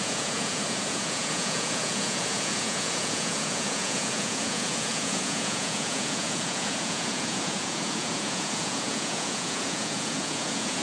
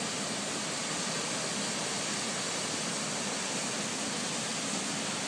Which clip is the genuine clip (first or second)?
second